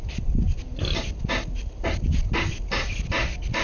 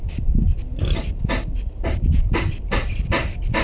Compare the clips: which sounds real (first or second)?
first